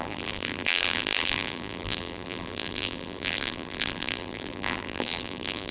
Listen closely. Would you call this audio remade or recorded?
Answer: remade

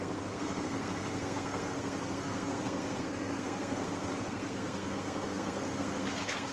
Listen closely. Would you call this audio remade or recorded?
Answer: remade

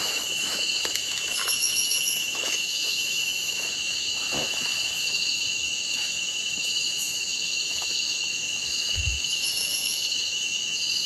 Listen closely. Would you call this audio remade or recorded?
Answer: remade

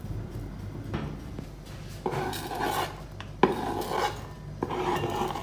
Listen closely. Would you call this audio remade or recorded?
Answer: recorded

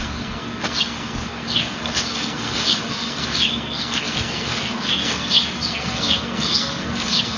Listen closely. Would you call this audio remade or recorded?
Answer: remade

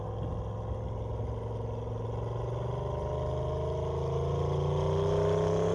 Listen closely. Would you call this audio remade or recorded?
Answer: recorded